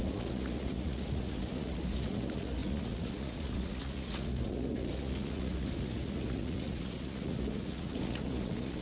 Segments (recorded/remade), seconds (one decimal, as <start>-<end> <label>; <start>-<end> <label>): 0.0-8.8 remade